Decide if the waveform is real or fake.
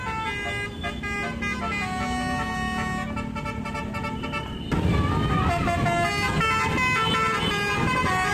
real